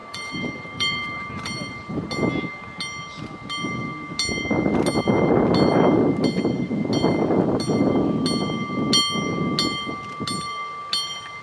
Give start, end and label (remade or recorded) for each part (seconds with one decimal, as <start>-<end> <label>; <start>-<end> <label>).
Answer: 0.0-2.1 remade; 2.1-11.4 recorded